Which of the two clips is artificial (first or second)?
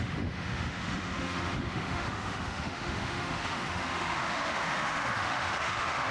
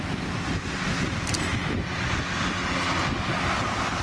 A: first